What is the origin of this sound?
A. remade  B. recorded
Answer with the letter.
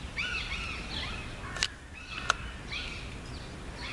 B